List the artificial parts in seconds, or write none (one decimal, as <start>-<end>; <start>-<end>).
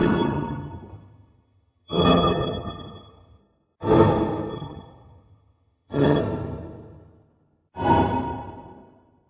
0.0-3.4; 4.5-6.2